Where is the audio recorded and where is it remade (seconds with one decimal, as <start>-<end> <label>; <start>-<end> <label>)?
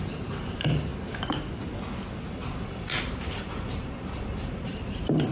0.0-0.9 remade; 0.9-2.3 recorded; 2.3-5.3 remade